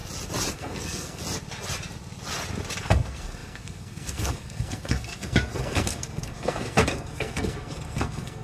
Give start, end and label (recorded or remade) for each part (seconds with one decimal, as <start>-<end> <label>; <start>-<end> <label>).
0.0-0.5 recorded; 0.5-1.2 remade; 1.2-2.8 recorded; 2.8-8.4 remade